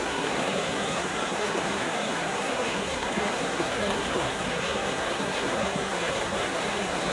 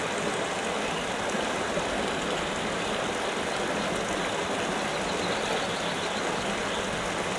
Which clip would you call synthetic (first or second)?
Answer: first